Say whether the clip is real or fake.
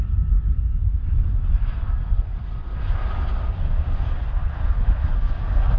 real